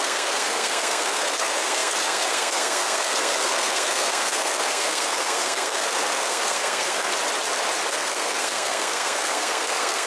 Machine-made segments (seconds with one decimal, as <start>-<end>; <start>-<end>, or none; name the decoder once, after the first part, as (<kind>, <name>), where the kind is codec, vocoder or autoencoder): 0.0-7.1 (codec, SNAC); 7.9-10.1